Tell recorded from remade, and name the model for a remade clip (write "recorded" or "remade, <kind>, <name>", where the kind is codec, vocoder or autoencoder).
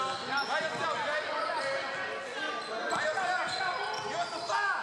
recorded